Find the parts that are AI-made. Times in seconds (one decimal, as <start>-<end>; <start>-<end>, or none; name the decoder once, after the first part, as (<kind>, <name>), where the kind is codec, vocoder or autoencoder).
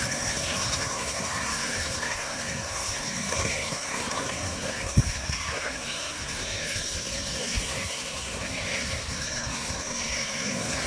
0.0-10.9 (codec, SNAC)